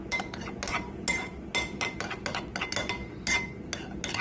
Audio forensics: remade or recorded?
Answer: recorded